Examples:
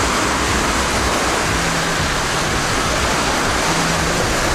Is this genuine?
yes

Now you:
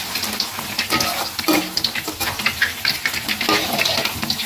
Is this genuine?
yes